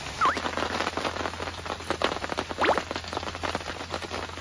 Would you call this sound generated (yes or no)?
no